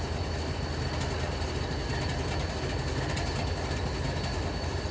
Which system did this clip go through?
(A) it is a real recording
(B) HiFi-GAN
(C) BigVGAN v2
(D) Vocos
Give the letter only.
A